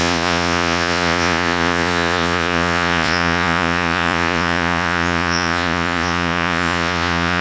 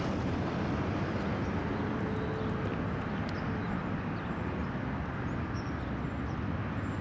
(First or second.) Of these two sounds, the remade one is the first